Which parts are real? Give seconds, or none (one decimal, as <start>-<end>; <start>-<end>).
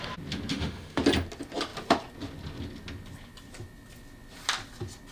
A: 0.0-0.5; 1.0-5.1